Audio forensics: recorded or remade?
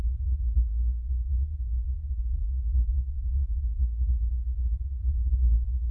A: remade